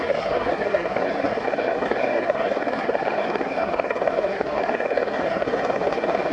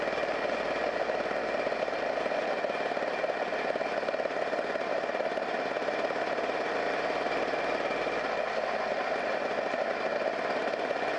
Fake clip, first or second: first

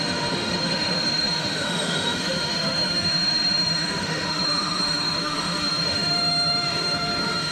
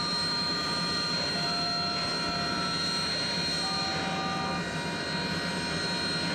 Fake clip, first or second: first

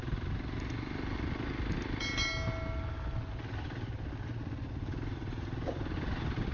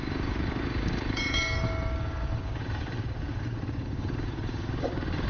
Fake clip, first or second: second